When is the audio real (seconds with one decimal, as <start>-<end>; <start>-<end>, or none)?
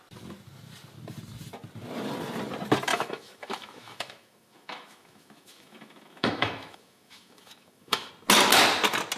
0.0-2.9; 8.1-9.2